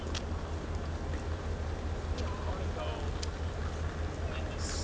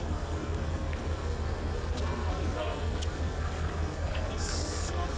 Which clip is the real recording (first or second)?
first